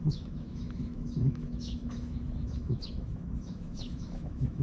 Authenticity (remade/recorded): remade